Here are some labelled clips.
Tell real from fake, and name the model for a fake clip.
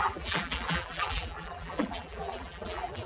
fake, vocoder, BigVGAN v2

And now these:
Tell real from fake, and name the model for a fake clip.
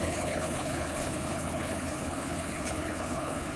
fake, codec, HILCodec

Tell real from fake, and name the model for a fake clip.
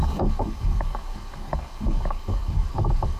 fake, codec, DAC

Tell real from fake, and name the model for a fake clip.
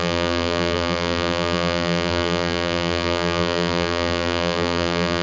fake, vocoder, BigVGAN v2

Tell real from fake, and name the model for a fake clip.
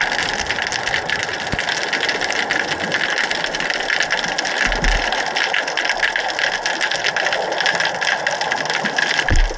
real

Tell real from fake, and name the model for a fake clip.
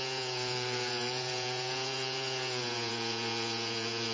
fake, vocoder, Vocos